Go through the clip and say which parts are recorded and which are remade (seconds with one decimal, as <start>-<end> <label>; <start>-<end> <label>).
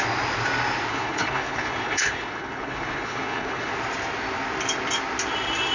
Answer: 0.0-0.9 recorded; 0.9-3.7 remade; 3.7-5.7 recorded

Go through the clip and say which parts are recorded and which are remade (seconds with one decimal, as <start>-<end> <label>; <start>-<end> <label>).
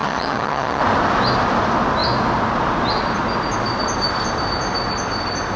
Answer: 0.0-0.8 remade; 0.8-5.6 recorded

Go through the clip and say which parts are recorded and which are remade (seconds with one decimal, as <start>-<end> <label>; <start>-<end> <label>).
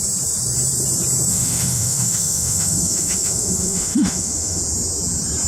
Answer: 0.0-1.3 recorded; 1.3-4.6 remade; 4.6-5.5 recorded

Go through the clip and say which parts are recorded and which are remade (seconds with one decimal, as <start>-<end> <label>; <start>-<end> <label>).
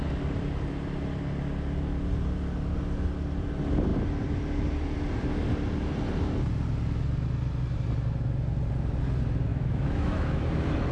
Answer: 0.0-9.5 recorded; 9.5-10.4 remade; 10.4-10.9 recorded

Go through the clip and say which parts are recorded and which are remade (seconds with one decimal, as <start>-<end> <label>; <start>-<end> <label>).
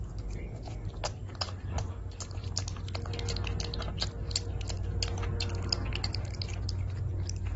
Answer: 0.0-7.6 recorded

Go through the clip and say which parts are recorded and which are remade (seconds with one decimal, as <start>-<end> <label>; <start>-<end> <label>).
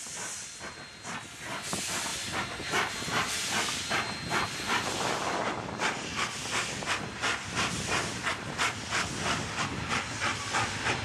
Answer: 0.0-11.0 recorded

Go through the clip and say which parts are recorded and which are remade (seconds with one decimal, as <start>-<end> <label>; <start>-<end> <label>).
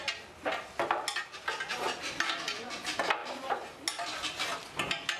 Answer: 0.0-5.2 recorded